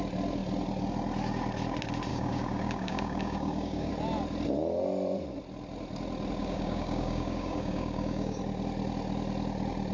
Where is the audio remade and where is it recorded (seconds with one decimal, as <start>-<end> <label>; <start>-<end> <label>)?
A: 0.0-2.1 recorded; 2.1-3.9 remade; 3.9-6.4 recorded; 6.4-8.4 remade; 8.4-9.9 recorded